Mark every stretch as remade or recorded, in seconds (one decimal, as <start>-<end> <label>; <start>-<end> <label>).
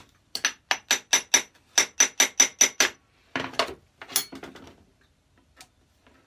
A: 0.0-6.3 recorded